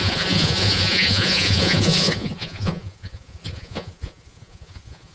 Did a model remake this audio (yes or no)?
yes